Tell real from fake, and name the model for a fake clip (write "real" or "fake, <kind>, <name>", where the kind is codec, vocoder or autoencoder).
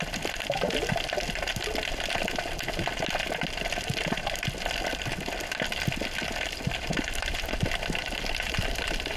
real